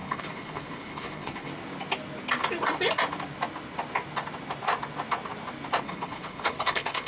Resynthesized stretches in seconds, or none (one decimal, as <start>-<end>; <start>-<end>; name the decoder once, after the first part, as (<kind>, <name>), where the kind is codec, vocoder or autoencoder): 0.0-1.5 (codec, HILCodec); 5.8-7.1